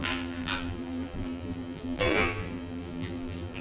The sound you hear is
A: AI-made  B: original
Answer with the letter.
A